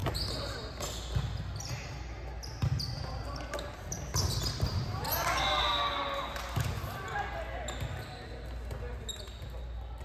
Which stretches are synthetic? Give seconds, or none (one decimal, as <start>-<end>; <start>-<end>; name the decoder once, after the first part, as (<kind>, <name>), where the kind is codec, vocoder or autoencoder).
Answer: 0.0-0.6 (vocoder, BigVGAN v2)